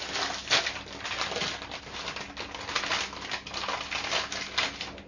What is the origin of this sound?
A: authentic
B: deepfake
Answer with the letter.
A